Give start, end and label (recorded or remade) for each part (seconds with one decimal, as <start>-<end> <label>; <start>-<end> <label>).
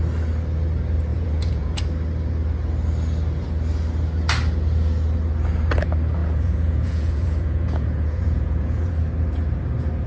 0.0-1.1 recorded; 1.1-1.8 remade; 1.8-6.2 recorded; 6.2-8.9 remade; 8.9-10.1 recorded